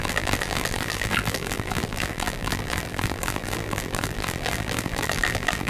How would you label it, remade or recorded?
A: remade